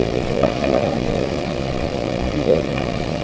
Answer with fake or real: fake